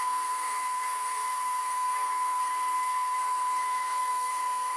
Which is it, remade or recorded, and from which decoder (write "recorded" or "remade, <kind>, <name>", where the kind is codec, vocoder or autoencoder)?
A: remade, codec, SNAC